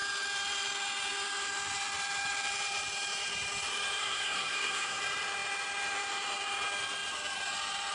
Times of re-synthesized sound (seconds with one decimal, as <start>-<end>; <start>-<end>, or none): 4.0-5.0